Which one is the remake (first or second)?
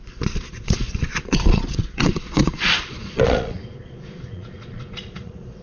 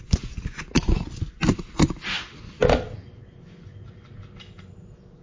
first